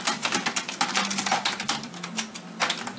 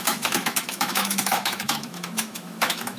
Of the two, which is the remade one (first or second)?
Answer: second